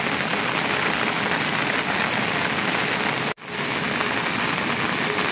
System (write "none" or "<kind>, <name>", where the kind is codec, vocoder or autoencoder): none